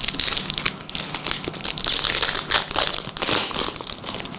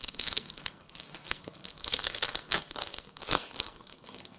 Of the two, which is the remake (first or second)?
second